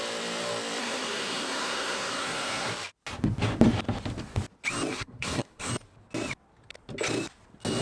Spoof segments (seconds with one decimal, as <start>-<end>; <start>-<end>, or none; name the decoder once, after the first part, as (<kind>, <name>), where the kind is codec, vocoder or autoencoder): 0.8-2.7 (codec, SNAC); 4.9-5.7

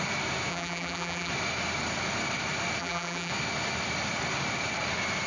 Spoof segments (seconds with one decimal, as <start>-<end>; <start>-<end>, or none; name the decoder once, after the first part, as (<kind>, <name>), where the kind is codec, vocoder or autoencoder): 0.5-1.3 (vocoder, BigVGAN v2); 2.8-3.3

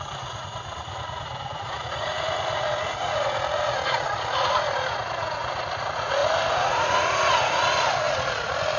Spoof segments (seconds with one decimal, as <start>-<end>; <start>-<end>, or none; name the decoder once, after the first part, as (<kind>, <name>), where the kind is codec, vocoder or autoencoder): 0.0-8.8 (vocoder, Vocos)